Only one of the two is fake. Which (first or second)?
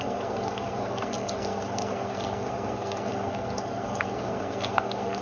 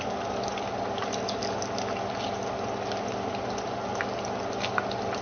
first